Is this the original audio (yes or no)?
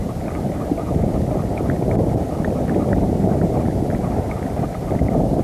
yes